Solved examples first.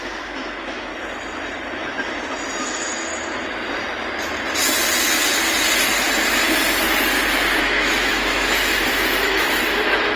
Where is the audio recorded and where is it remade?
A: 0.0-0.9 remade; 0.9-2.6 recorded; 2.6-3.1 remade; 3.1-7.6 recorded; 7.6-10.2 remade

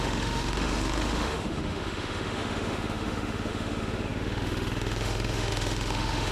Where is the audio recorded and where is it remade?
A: 0.0-6.3 remade

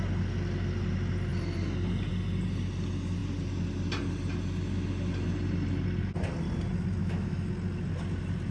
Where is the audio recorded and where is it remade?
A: 0.0-7.0 recorded; 7.0-7.5 remade; 7.5-8.5 recorded

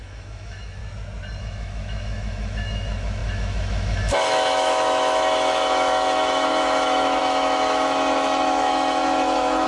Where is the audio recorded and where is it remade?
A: 0.0-0.8 remade; 0.8-1.4 recorded; 1.4-9.7 remade

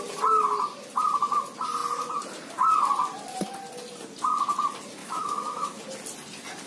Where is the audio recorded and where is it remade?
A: 0.0-5.0 recorded; 5.0-5.8 remade; 5.8-6.7 recorded

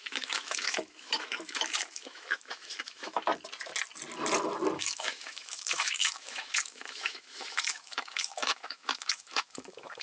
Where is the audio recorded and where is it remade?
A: 0.0-3.3 remade; 3.3-4.8 recorded; 4.8-10.0 remade

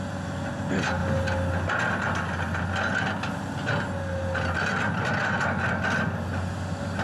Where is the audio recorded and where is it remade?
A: 0.0-7.0 recorded

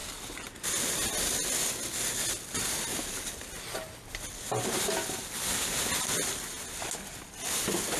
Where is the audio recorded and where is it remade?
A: 0.0-8.0 recorded